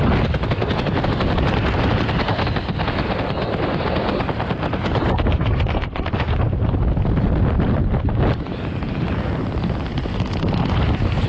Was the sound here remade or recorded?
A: recorded